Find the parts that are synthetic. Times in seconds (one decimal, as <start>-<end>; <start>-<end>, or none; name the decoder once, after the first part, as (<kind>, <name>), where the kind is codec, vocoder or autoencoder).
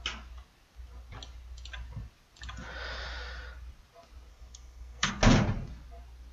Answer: 4.3-5.1 (codec, SNAC)